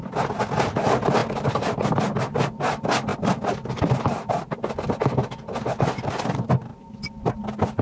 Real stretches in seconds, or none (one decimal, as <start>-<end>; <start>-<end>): 0.0-7.8